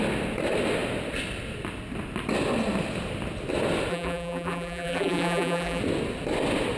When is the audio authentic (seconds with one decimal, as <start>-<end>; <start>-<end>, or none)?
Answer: 0.0-3.9; 5.8-6.8